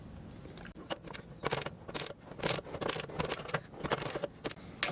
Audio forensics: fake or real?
real